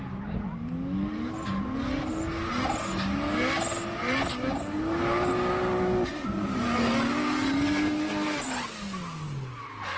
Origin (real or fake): real